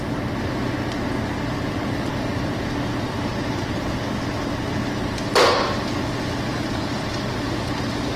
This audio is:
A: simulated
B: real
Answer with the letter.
B